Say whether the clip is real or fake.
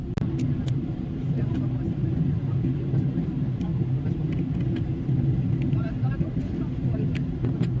real